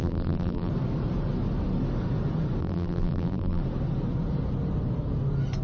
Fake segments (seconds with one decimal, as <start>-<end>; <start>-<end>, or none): 0.0-0.7; 2.6-3.6